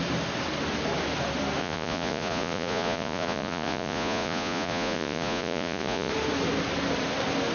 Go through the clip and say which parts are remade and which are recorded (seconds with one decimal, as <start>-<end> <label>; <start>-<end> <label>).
0.0-1.6 recorded; 1.6-6.1 remade; 6.1-7.5 recorded